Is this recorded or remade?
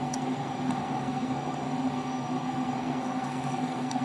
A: remade